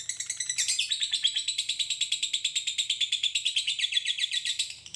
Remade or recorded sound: remade